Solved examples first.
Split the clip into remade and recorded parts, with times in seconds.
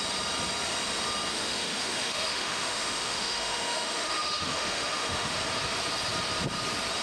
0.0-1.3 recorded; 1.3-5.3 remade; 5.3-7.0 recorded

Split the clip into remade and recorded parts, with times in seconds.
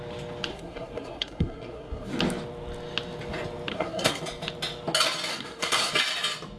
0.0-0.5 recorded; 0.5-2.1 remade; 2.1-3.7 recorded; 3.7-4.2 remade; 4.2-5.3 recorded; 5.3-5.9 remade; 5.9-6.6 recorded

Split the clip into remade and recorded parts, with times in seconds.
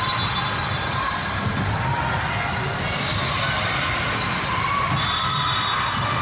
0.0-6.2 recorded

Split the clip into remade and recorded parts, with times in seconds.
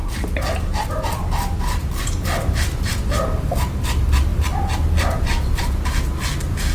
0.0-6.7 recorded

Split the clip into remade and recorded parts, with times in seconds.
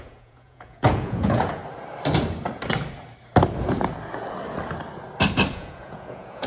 0.0-1.6 remade; 1.6-5.5 recorded; 5.5-6.5 remade